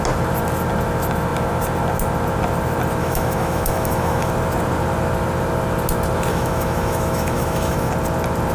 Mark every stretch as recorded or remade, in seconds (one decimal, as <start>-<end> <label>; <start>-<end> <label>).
0.0-3.0 recorded; 3.0-4.3 remade; 4.3-6.3 recorded; 6.3-7.9 remade; 7.9-8.5 recorded